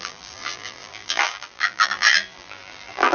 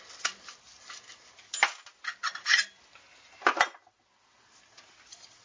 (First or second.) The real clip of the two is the second